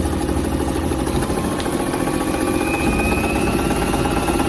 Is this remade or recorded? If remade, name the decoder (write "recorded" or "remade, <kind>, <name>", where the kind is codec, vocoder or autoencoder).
recorded